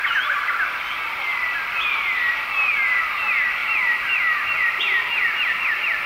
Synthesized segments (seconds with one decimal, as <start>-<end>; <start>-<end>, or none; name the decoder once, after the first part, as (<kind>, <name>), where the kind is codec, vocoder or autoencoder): 3.6-4.8 (vocoder, BigVGAN v2)